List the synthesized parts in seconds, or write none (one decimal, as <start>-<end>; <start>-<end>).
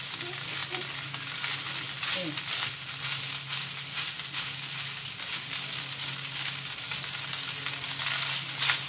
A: none